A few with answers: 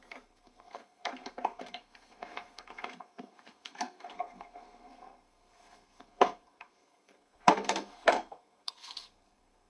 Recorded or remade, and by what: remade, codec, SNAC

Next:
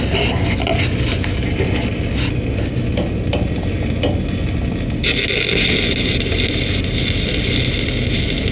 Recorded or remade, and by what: recorded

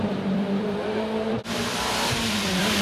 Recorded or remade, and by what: remade, vocoder, BigVGAN v2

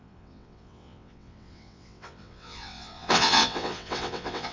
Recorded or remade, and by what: remade, vocoder, WaveNeXt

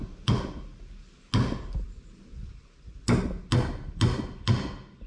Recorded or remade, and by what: recorded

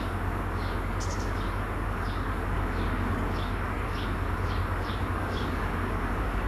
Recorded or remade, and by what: remade, codec, DAC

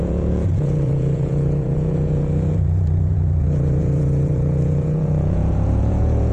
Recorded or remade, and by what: remade, vocoder, Vocos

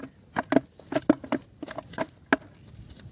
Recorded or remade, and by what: recorded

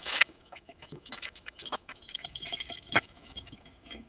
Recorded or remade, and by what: remade, autoencoder, DAC-VAE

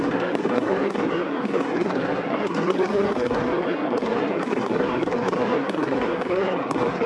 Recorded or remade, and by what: remade, codec, SNAC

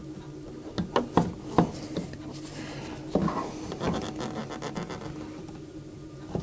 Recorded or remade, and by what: recorded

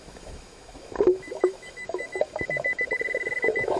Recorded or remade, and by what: remade, autoencoder, DAC-VAE